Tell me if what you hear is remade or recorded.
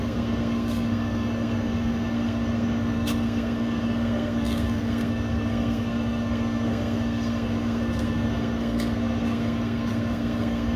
remade